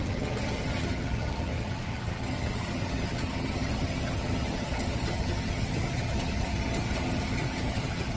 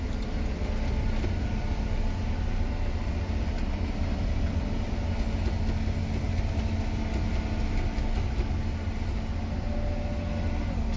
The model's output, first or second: first